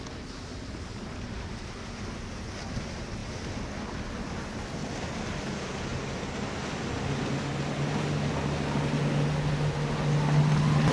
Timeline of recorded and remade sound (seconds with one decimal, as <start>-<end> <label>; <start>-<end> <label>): 0.0-0.9 recorded; 0.9-2.4 remade; 2.4-4.8 recorded; 4.8-5.4 remade; 5.4-10.9 recorded